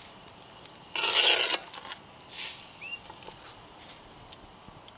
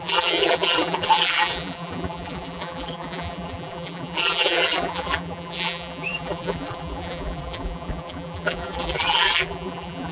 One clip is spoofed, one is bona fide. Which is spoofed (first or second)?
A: second